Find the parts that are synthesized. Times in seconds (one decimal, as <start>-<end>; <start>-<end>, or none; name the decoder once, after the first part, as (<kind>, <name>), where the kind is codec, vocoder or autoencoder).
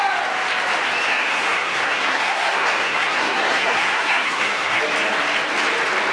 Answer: 1.1-4.8 (codec, SNAC)